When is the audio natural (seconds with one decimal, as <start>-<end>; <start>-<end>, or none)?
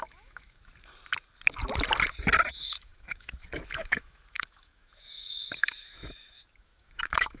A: 0.7-2.5